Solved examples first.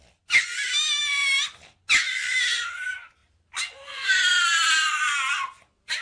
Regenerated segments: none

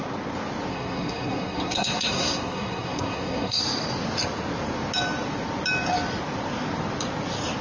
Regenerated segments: 0.7-3.6

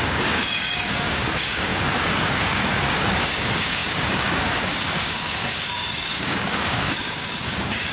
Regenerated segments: 0.0-7.9

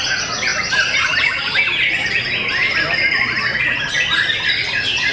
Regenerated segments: none

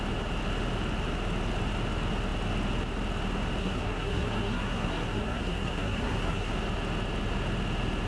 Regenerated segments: 3.6-6.5

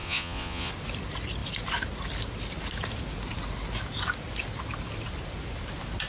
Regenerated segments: 0.0-0.7